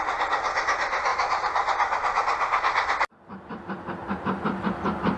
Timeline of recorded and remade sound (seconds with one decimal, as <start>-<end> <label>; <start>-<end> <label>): 0.0-5.2 recorded